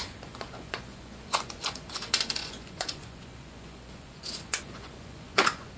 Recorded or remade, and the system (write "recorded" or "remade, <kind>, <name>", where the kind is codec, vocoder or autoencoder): remade, vocoder, Vocos